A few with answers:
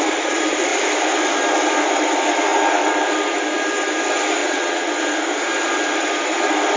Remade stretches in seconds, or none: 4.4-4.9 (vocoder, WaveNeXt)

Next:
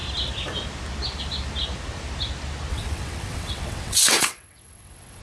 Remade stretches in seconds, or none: 2.7-5.2 (vocoder, WaveNeXt)

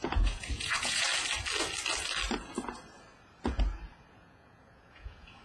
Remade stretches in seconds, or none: 0.0-1.1 (vocoder, Vocos); 4.1-5.4

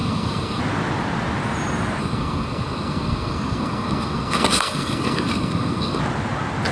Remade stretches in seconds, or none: 0.0-0.6 (codec, SNAC); 2.0-6.0

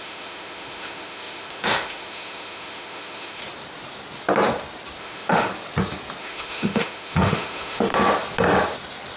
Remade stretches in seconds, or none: 0.0-3.4 (autoencoder, DAC-VAE); 5.0-5.5; 6.2-7.9